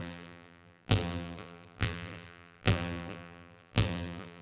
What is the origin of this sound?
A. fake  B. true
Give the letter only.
A